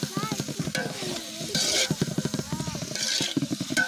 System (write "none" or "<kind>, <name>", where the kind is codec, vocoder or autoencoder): none